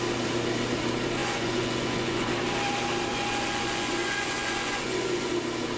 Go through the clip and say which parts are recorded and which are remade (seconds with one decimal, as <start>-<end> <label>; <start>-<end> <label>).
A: 0.0-1.2 recorded; 1.2-2.3 remade; 2.3-3.1 recorded; 3.1-5.3 remade; 5.3-5.8 recorded